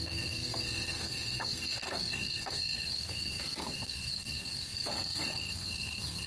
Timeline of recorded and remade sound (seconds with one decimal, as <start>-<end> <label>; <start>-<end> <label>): 0.0-6.3 remade